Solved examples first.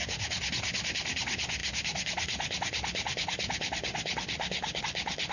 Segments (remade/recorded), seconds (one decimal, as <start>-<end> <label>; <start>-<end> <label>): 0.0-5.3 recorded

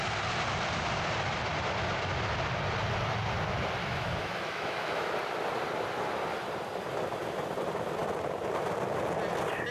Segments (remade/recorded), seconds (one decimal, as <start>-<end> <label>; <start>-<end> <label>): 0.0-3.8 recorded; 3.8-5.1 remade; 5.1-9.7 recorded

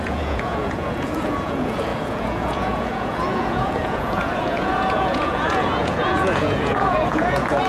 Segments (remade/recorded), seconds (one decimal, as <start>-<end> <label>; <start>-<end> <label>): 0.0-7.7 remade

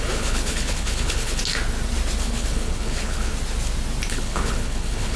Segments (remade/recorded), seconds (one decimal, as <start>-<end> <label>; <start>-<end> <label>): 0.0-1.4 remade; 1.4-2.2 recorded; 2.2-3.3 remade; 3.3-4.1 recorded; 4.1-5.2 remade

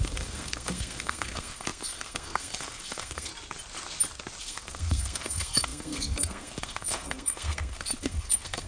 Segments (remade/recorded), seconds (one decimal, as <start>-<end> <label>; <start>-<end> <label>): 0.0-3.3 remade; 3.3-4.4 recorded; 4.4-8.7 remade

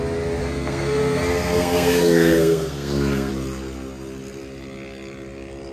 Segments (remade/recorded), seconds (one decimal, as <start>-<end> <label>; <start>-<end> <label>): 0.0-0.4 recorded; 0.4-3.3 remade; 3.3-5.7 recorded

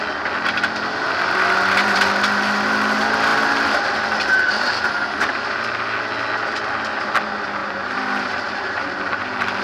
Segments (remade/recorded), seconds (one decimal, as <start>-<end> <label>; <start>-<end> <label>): 0.0-7.6 recorded; 7.6-9.6 remade

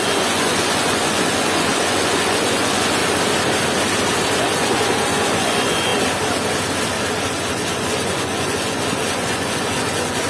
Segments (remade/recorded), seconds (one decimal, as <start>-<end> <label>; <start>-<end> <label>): 0.0-3.0 remade; 3.0-4.4 recorded; 4.4-5.9 remade; 5.9-7.2 recorded; 7.2-10.3 remade